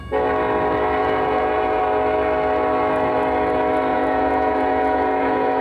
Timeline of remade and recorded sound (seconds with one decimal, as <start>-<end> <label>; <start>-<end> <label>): 0.0-1.0 recorded; 1.0-1.8 remade; 1.8-3.9 recorded; 3.9-5.6 remade